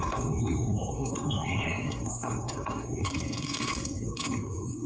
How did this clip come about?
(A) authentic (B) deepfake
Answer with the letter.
B